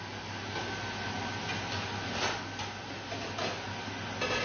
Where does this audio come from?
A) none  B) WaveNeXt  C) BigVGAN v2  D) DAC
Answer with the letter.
A